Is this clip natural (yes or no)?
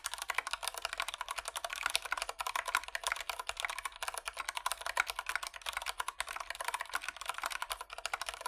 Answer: yes